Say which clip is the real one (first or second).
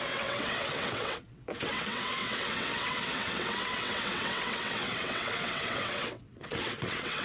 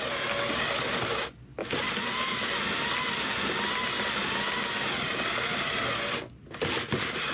second